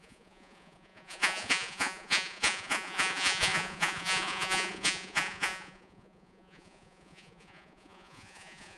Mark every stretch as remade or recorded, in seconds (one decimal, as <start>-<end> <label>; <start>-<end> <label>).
0.0-8.8 remade